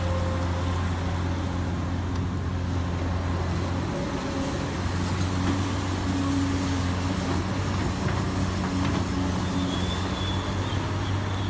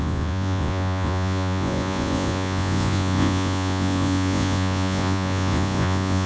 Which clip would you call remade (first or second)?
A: second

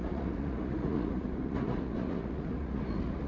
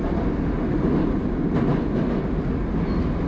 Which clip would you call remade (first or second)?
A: first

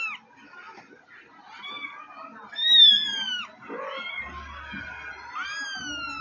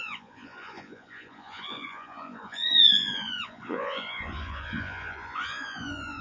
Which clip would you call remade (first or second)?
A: second